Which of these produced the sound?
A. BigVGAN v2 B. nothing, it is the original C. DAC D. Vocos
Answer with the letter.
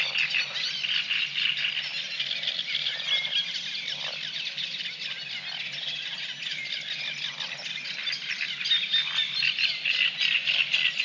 B